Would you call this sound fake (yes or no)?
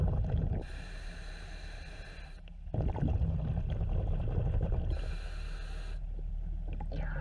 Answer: no